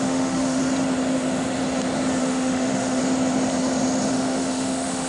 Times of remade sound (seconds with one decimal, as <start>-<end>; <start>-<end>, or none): 0.0-0.6; 2.2-3.0; 4.1-5.1